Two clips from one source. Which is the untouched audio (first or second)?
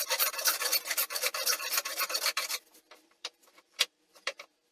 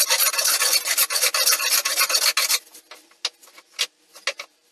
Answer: second